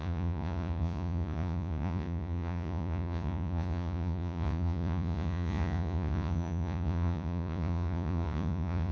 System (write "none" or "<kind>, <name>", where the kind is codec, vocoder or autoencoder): vocoder, Vocos